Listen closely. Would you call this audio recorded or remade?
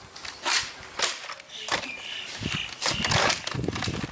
recorded